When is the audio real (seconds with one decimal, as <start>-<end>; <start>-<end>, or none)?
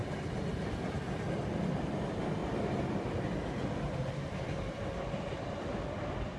0.0-6.4